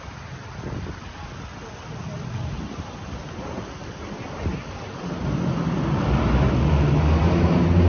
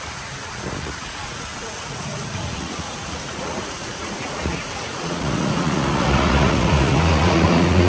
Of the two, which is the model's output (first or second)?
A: second